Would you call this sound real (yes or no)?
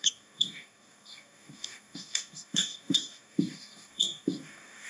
no